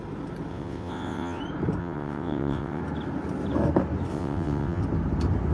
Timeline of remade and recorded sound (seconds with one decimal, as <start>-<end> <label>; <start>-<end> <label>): 0.0-0.5 recorded; 0.5-1.4 remade; 1.4-1.8 recorded; 1.8-2.8 remade; 2.8-4.1 recorded; 4.1-4.8 remade; 4.8-5.5 recorded